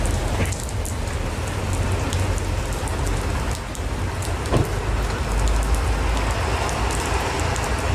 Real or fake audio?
real